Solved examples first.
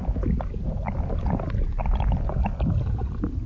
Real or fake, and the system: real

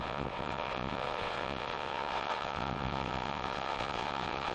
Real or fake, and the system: fake, vocoder, WaveNeXt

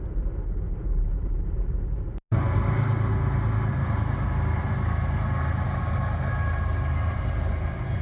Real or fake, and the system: real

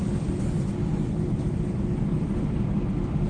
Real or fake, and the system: real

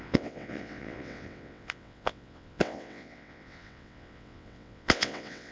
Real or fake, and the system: fake, vocoder, WaveNeXt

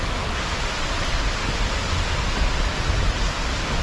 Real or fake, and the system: real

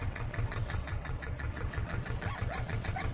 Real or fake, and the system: fake, vocoder, WaveNeXt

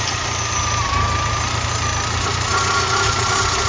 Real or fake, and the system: real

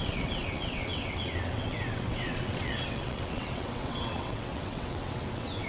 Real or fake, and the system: fake, vocoder, WaveNeXt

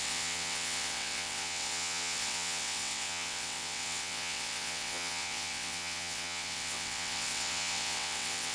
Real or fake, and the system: fake, vocoder, WaveNeXt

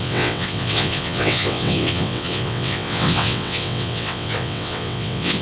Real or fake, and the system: fake, vocoder, WaveNeXt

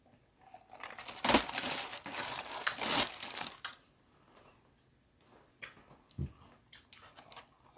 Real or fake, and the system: real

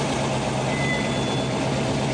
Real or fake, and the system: real